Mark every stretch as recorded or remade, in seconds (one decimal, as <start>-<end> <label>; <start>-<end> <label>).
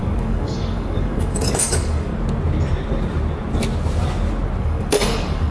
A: 0.0-2.1 remade; 2.1-4.6 recorded; 4.6-5.5 remade